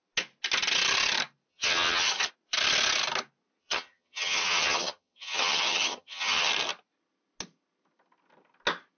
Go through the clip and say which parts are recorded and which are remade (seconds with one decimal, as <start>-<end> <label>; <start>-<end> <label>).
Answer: 0.0-1.5 recorded; 1.5-2.3 remade; 2.3-3.6 recorded; 3.6-6.5 remade; 6.5-9.0 recorded